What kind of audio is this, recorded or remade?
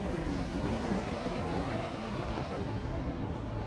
remade